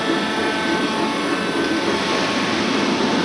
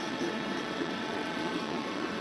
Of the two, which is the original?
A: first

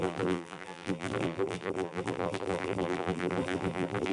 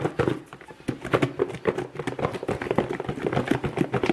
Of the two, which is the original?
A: second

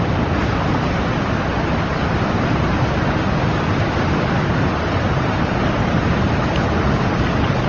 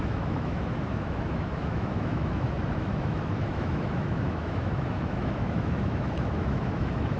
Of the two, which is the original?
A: first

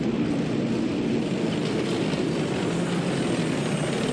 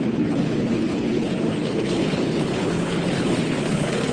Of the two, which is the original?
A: first